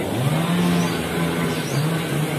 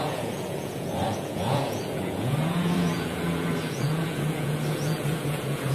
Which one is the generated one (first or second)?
second